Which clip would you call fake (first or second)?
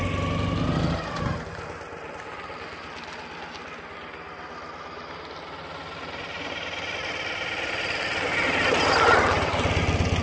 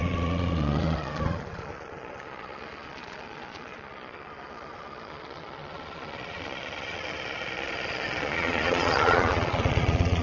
second